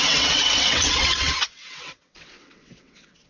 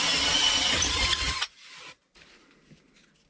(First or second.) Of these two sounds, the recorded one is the second